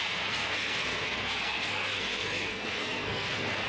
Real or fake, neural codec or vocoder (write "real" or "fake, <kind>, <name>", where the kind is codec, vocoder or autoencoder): fake, codec, SNAC